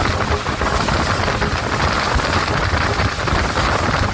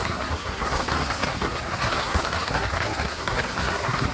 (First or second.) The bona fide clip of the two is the first